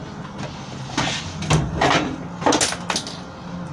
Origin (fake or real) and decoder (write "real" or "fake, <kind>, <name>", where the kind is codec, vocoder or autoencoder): real